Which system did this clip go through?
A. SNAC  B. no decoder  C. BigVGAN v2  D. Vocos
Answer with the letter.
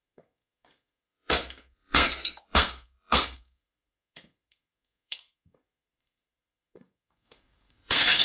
A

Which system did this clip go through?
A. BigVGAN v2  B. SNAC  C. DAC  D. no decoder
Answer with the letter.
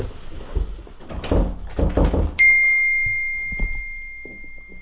D